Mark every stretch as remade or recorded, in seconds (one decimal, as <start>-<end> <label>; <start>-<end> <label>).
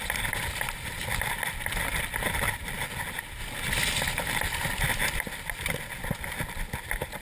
0.0-7.2 recorded